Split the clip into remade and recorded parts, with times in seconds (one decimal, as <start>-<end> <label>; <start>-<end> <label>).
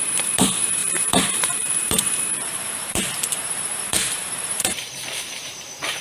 0.0-6.0 remade